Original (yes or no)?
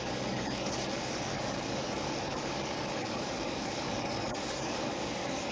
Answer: no